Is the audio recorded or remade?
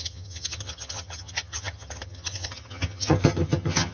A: remade